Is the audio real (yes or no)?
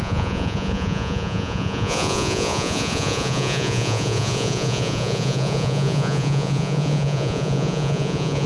no